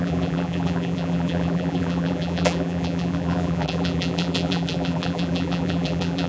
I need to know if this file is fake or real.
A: fake